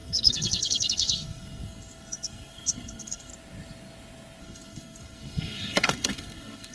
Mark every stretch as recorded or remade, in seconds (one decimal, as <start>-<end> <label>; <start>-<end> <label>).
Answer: 0.0-3.3 remade; 3.3-4.4 recorded; 4.4-6.7 remade